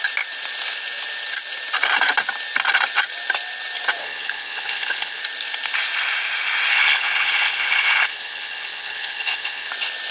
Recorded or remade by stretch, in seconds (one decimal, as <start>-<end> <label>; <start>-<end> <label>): 0.0-4.0 recorded; 4.0-5.2 remade; 5.2-6.7 recorded; 6.7-9.7 remade; 9.7-10.1 recorded